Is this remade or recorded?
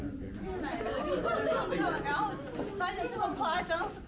recorded